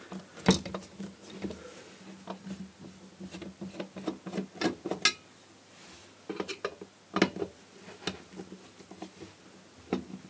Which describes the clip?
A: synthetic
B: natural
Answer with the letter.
B